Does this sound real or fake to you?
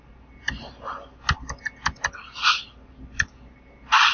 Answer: real